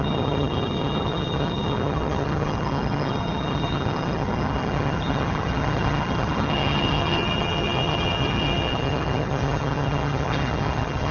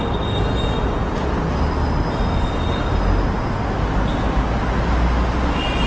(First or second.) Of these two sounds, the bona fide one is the second